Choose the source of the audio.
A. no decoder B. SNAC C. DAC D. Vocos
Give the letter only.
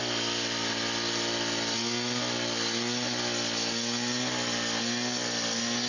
A